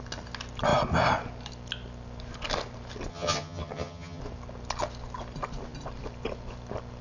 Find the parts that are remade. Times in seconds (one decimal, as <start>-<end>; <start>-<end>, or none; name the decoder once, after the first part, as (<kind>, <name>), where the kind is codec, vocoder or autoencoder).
3.1-4.2 (vocoder, HiFi-GAN)